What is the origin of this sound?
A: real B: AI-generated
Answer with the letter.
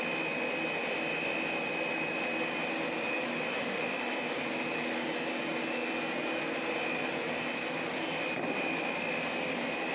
A